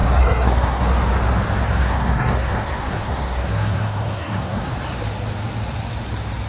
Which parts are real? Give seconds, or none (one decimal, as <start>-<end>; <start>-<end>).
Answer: 0.8-1.8; 4.7-6.5